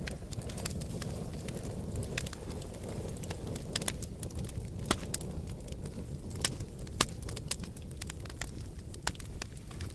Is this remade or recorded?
recorded